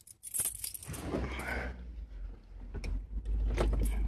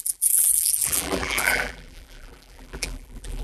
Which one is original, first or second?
first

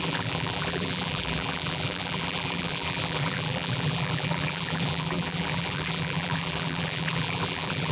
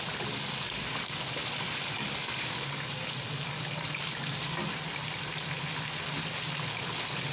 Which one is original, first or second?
second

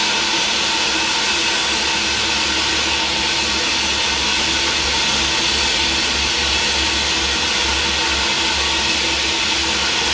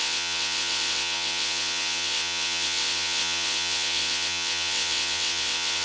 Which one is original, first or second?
first